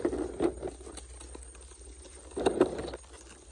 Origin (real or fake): real